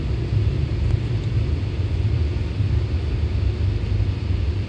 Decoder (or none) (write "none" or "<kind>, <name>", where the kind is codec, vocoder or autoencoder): none